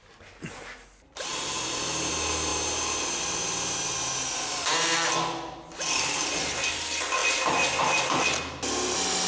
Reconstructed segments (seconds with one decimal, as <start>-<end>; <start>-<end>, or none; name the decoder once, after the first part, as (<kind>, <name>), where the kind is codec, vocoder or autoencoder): none